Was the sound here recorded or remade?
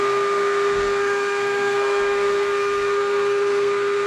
remade